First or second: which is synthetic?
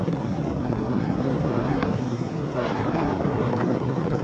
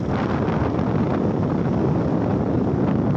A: first